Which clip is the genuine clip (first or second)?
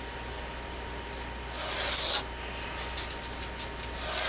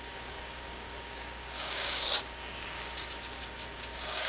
first